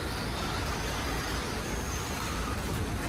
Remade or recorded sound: recorded